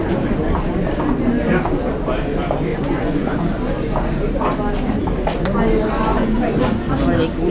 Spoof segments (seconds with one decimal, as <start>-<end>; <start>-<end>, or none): 2.7-3.4; 6.1-6.6

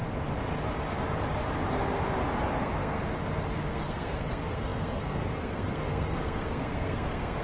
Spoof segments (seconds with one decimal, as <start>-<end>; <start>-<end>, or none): 2.5-3.0; 3.7-7.4

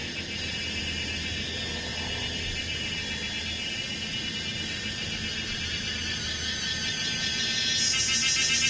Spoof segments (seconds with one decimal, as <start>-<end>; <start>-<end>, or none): none

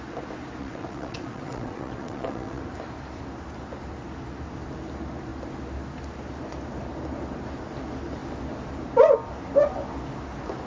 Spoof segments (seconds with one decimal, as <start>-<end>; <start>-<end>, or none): 0.6-2.6

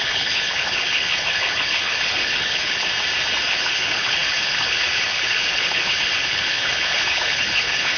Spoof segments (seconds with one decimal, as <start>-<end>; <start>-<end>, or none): 0.0-2.9; 3.5-8.0

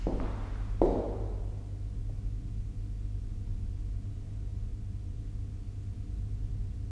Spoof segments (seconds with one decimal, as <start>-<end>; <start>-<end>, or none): 4.7-5.2